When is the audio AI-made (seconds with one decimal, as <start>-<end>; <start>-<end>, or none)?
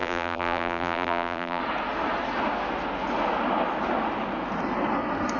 0.0-1.6